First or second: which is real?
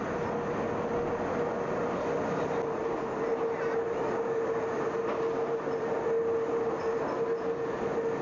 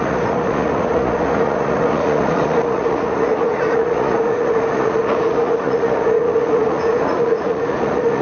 first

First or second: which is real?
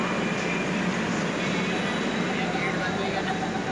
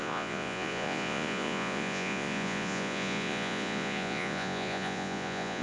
first